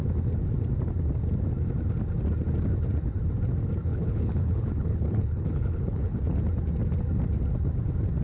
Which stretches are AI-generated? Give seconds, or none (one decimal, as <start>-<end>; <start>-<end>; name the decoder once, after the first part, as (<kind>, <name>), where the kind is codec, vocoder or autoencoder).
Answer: 3.9-6.4 (codec, HILCodec)